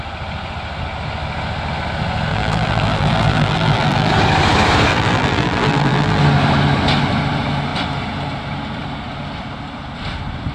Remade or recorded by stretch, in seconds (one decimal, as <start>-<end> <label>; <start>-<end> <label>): 0.0-2.3 recorded; 2.3-4.1 remade; 4.1-4.9 recorded; 4.9-6.2 remade; 6.2-10.5 recorded